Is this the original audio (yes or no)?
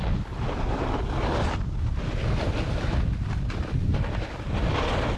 yes